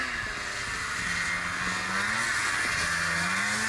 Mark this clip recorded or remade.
recorded